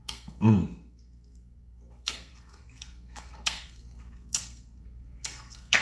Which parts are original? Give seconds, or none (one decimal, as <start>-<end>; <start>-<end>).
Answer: none